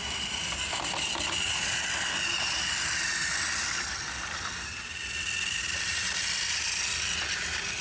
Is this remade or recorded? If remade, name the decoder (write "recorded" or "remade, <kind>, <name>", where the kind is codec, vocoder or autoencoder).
remade, vocoder, BigVGAN v2